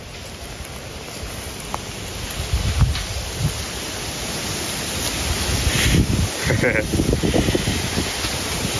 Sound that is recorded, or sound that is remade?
recorded